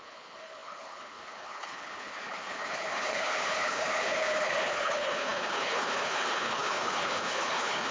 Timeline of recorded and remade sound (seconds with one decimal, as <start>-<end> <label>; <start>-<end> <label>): 0.0-7.9 remade